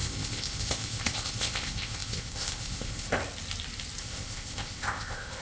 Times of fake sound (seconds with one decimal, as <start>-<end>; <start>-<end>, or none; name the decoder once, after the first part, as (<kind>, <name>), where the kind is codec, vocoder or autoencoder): 0.0-3.2 (codec, ZipCodec); 4.0-5.4